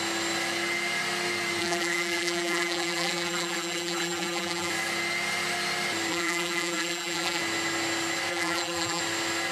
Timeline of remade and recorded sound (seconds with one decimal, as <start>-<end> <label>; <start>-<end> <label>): 0.0-1.6 recorded; 1.6-4.7 remade; 4.7-6.1 recorded; 6.1-7.4 remade; 7.4-8.3 recorded; 8.3-9.0 remade; 9.0-9.5 recorded